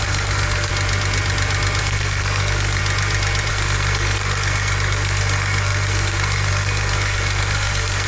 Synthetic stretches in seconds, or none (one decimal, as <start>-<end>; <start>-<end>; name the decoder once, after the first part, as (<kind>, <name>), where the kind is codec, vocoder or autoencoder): 0.0-0.7 (codec, SNAC); 1.8-2.8; 3.5-8.1

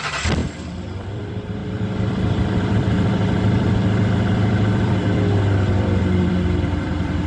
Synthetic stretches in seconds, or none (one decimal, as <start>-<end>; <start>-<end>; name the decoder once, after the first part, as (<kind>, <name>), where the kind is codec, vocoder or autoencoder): 0.0-7.3 (vocoder, BigVGAN v2)

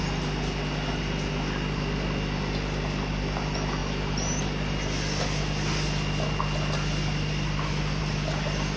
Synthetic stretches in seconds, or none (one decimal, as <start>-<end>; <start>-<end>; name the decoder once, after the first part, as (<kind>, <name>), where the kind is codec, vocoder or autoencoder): none